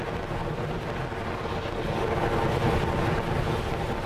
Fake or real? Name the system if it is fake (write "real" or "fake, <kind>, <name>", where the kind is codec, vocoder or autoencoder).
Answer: real